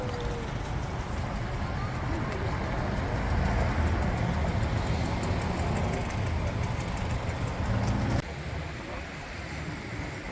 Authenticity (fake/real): real